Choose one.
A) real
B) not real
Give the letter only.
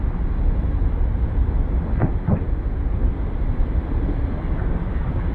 A